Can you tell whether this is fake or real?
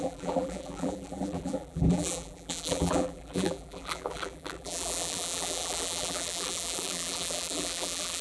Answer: fake